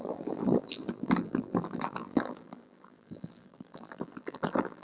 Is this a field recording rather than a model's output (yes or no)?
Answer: no